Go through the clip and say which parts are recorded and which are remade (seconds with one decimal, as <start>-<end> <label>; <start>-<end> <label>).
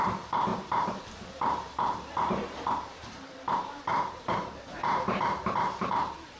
0.0-6.4 remade